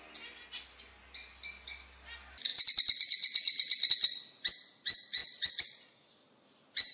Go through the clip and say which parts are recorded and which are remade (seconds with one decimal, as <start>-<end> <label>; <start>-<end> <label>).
0.0-5.2 recorded; 5.2-6.1 remade; 6.1-6.9 recorded